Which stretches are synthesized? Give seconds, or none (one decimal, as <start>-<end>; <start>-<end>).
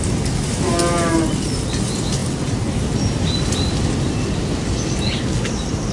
none